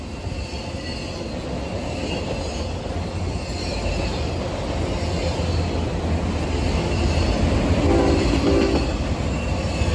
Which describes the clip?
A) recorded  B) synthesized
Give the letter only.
A